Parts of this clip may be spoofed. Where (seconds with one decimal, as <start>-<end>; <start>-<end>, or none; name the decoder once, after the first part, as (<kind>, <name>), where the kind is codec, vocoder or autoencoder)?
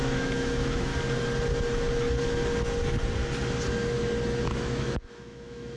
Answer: 0.0-0.9 (autoencoder, DAC-VAE); 4.4-5.8